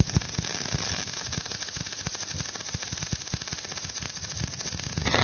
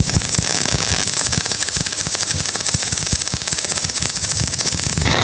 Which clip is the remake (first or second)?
second